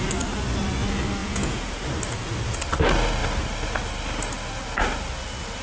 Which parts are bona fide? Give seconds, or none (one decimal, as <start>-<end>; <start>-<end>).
0.0-1.2; 1.8-5.6